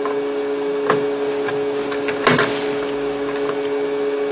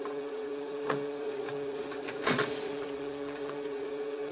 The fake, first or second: second